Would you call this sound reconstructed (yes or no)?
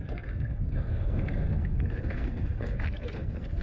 yes